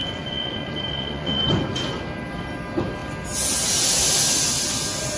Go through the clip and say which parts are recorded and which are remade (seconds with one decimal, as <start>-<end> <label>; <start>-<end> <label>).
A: 0.0-1.6 remade; 1.6-5.2 recorded